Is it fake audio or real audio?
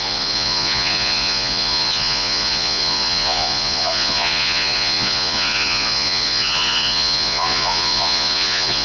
fake